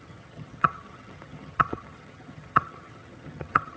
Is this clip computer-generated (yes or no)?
yes